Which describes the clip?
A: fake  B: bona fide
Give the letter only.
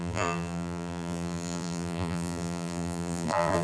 A